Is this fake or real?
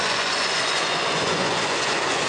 fake